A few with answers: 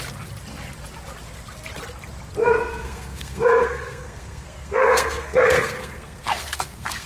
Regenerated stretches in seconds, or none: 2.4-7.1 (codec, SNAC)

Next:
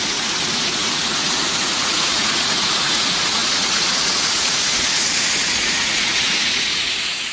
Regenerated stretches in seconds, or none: 0.0-7.3 (vocoder, Vocos)

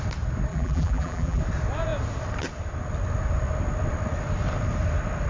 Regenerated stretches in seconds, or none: 0.5-1.4 (vocoder, BigVGAN v2)

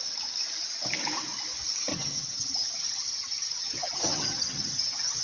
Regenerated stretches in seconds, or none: 1.9-5.2 (vocoder, HiFi-GAN)

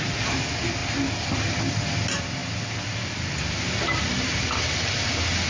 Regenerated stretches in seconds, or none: 0.8-1.6 (vocoder, BigVGAN v2)

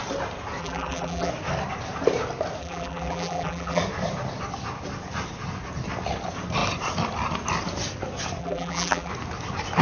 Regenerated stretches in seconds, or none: 0.6-1.3 (vocoder, BigVGAN v2); 2.6-3.8; 8.4-9.1

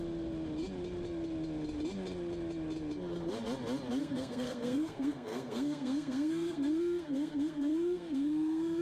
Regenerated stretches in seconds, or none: 4.0-8.8 (codec, SNAC)

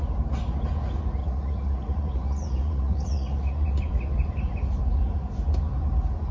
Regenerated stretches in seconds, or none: 1.2-3.8 (vocoder, Vocos)